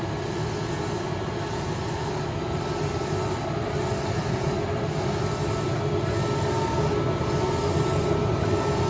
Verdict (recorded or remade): recorded